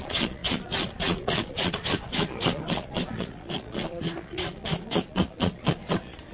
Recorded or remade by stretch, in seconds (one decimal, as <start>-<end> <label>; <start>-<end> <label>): 0.0-6.3 remade